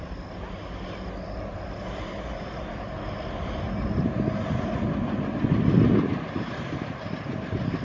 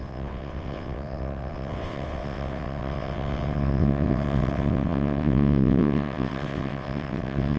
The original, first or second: first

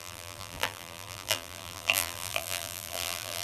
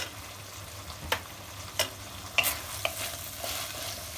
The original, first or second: second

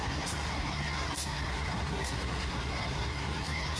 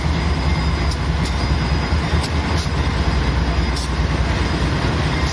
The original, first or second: second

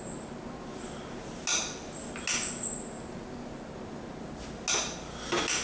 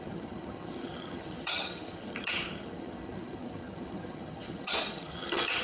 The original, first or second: first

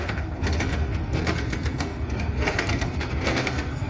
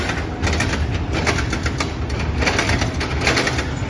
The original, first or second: second